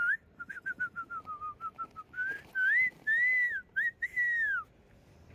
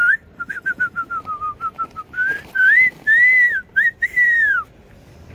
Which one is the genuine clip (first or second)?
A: first